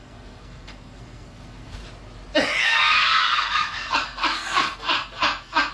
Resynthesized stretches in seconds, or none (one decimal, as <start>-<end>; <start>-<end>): 0.0-1.8; 2.6-5.7